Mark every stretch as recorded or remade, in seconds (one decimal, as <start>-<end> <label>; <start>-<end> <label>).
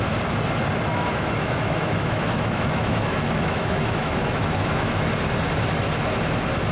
0.0-0.9 recorded; 0.9-4.9 remade; 4.9-6.7 recorded